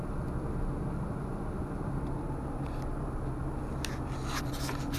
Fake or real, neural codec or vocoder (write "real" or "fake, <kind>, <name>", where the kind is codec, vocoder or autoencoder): real